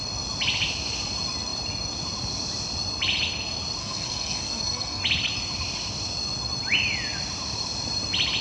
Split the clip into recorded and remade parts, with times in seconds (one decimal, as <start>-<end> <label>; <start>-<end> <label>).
0.0-3.8 recorded; 3.8-5.0 remade; 5.0-8.4 recorded